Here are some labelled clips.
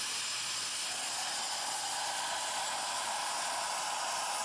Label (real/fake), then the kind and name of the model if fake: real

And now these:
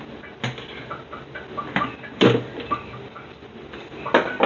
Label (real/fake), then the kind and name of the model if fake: real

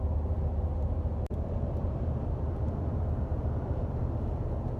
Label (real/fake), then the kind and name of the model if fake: real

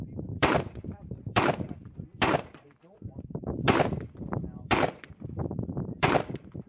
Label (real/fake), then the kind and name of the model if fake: fake, vocoder, BigVGAN v2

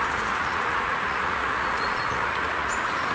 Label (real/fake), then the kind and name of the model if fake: fake, vocoder, Vocos